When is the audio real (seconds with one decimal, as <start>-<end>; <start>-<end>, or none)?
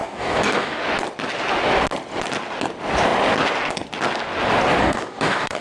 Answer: 0.8-4.8